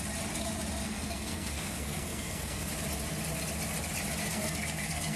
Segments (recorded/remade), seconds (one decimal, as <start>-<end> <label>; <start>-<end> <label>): 0.0-0.8 recorded; 0.8-2.7 remade; 2.7-4.2 recorded; 4.2-5.2 remade